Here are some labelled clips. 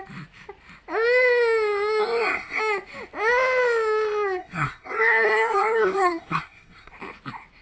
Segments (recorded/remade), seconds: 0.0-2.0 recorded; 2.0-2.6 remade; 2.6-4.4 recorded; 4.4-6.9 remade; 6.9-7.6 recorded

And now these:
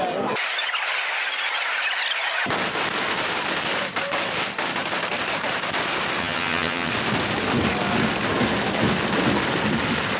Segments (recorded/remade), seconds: 0.0-6.2 recorded; 6.2-6.9 remade; 6.9-10.2 recorded

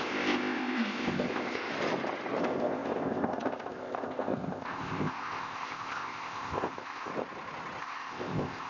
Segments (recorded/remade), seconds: 0.0-1.7 remade; 1.7-2.4 recorded; 2.4-7.1 remade; 7.1-7.8 recorded; 7.8-8.7 remade

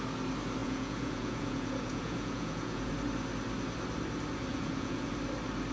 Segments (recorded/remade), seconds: 0.0-0.6 recorded; 0.6-2.9 remade; 2.9-4.5 recorded; 4.5-5.1 remade; 5.1-5.7 recorded